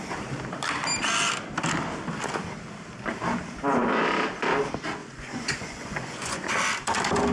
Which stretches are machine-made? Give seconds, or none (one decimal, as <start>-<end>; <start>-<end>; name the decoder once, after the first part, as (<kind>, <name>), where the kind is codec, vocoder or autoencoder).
5.0-6.5 (vocoder, Vocos)